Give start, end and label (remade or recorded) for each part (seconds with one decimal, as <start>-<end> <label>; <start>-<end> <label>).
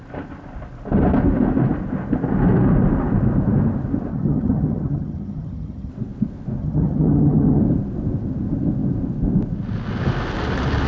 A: 0.0-4.1 recorded; 4.1-5.9 remade; 5.9-6.6 recorded; 6.6-7.6 remade; 7.6-10.9 recorded